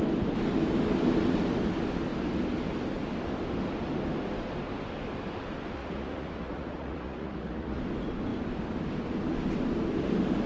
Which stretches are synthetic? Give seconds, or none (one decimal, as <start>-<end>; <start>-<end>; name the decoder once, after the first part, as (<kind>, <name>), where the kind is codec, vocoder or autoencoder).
5.8-7.8 (vocoder, Vocos)